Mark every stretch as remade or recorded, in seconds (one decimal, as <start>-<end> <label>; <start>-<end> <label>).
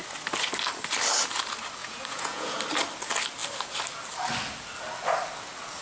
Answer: 0.0-1.8 recorded; 1.8-2.6 remade; 2.6-5.8 recorded